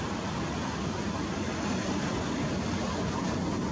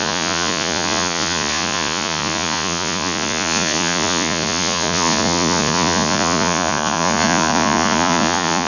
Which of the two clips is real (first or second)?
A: first